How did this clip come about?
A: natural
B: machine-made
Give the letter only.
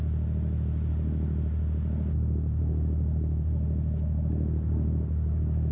A